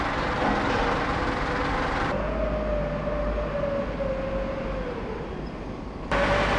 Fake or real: real